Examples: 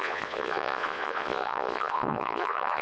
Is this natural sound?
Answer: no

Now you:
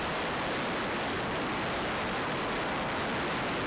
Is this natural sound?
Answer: yes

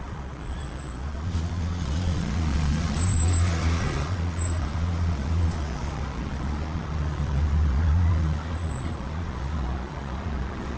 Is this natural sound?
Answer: no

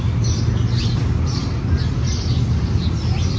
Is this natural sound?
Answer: yes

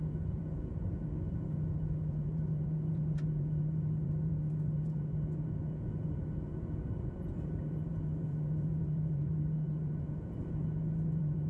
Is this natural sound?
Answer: no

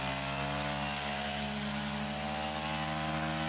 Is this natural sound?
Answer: yes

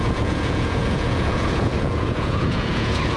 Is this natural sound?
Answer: no